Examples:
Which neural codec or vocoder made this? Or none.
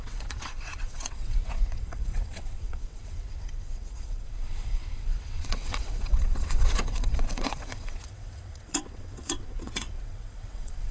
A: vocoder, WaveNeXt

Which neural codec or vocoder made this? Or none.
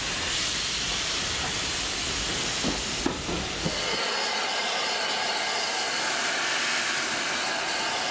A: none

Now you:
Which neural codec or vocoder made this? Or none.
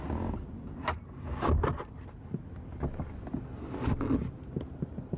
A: none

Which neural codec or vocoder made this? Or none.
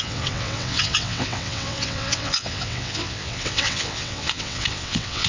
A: vocoder, WaveNeXt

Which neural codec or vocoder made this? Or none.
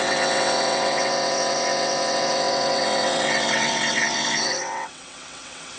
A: vocoder, WaveNeXt